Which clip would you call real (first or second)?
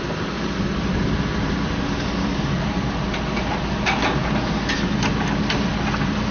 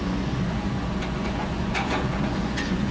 first